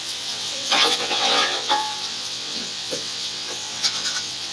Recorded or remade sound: remade